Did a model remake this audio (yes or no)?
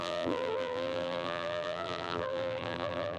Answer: yes